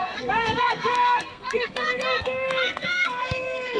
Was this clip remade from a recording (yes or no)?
yes